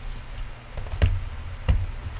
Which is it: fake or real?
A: real